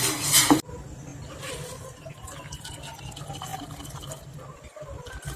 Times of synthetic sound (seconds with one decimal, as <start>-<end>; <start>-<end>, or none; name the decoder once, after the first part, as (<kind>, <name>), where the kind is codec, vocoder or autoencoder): none